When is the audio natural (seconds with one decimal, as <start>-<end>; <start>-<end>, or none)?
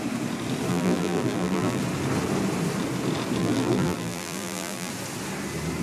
0.0-0.7; 1.8-3.4; 4.9-5.8